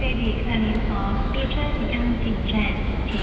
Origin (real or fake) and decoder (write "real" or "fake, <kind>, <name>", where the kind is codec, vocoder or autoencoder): fake, autoencoder, DAC-VAE